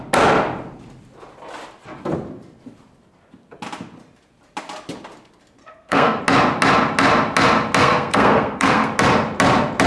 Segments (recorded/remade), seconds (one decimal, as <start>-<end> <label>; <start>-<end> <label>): 0.0-5.6 recorded; 5.6-6.2 remade; 6.2-7.8 recorded; 7.8-8.9 remade; 8.9-9.9 recorded